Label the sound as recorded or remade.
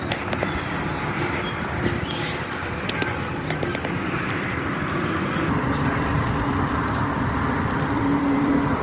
remade